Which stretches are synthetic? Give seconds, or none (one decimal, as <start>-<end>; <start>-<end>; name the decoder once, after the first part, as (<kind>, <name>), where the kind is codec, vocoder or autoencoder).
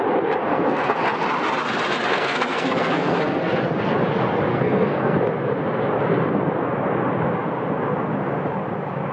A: 0.4-1.0 (codec, SNAC); 2.1-3.4; 4.5-5.2